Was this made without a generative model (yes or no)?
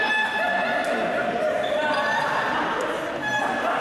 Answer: yes